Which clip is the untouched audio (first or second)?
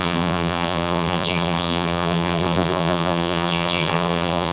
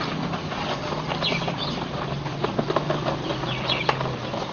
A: second